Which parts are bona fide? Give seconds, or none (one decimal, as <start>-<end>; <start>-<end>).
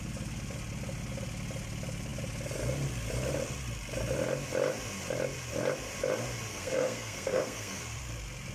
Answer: 0.0-6.5; 7.8-8.5